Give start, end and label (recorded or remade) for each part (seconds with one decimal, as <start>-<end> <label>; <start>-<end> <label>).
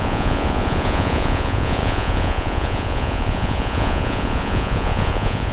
0.0-5.5 remade